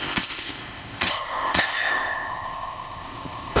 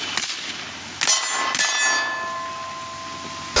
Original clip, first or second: second